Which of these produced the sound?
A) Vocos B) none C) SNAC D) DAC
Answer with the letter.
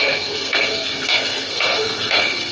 C